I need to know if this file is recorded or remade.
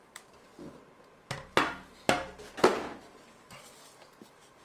recorded